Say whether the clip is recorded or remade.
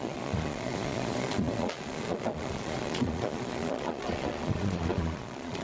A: remade